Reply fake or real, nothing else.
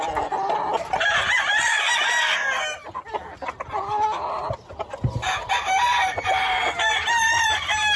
real